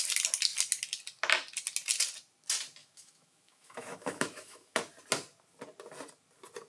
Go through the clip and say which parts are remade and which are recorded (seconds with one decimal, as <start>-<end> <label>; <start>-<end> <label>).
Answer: 0.0-2.8 recorded; 2.8-4.8 remade; 4.8-6.7 recorded